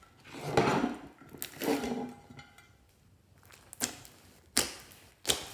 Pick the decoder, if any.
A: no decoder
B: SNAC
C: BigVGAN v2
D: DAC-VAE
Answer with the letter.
A